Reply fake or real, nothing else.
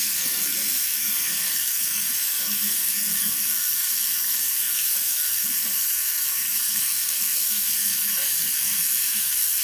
fake